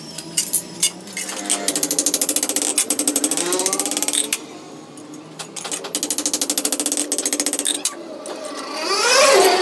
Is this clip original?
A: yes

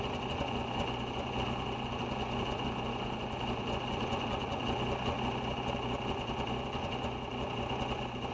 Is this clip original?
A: no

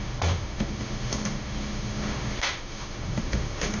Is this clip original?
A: no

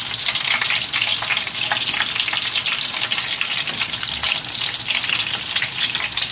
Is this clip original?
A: yes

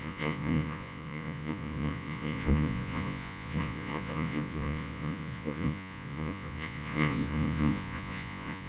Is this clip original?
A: no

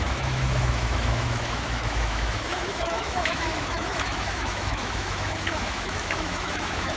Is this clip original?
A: no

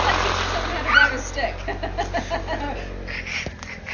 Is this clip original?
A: yes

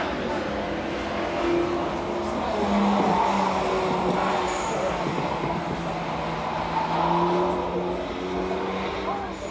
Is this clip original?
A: yes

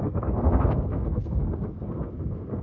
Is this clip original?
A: no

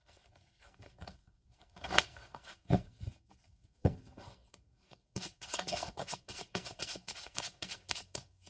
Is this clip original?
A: no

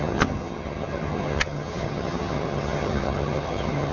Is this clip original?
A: no